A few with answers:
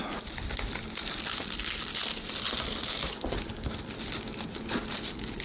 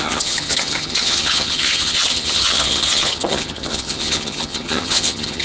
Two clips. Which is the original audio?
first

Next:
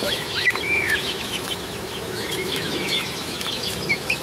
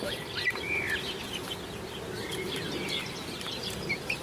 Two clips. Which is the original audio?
second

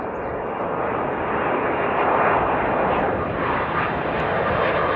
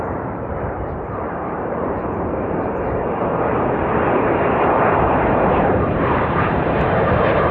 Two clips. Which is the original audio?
first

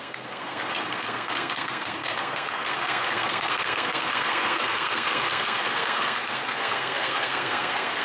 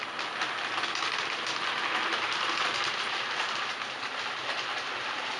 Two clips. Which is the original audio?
second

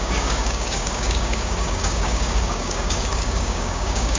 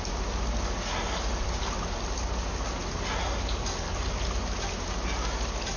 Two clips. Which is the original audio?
second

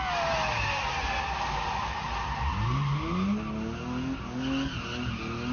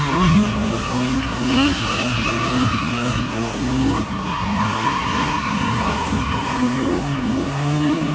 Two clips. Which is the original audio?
first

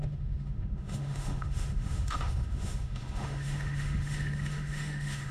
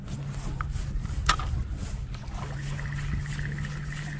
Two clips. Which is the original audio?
second